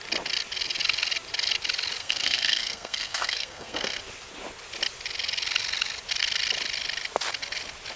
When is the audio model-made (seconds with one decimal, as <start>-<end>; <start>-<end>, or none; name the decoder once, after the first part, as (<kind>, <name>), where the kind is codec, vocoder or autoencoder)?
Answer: 2.0-4.0 (codec, SNAC)